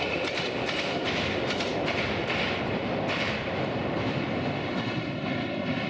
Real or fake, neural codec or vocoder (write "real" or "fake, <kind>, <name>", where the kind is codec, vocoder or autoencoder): real